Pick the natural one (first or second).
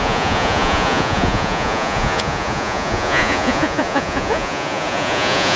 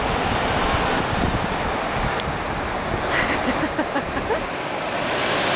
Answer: second